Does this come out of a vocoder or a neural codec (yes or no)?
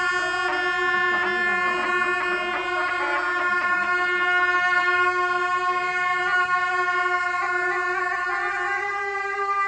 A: no